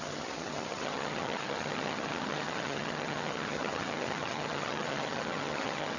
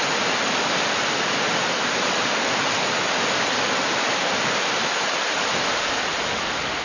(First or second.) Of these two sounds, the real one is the second